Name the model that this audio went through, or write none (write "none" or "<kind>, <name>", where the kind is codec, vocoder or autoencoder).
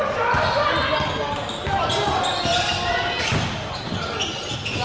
none